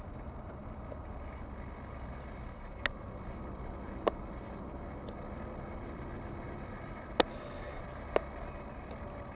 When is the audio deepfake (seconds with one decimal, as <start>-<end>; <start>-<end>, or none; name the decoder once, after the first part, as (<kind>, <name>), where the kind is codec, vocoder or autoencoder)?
7.3-7.8 (codec, SNAC)